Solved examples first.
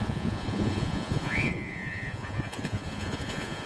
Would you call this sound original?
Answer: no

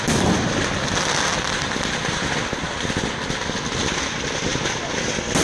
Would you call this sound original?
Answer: yes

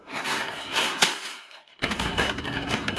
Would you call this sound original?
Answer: no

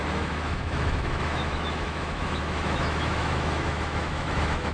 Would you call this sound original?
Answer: no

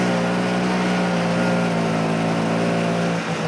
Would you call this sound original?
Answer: yes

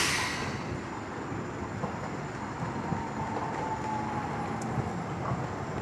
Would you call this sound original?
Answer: yes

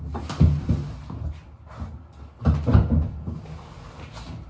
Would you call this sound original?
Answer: yes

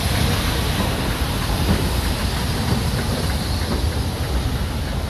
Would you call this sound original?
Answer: yes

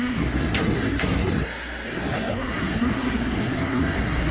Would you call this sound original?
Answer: no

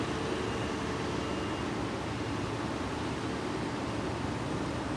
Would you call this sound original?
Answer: yes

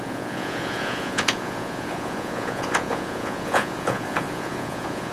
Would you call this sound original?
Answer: no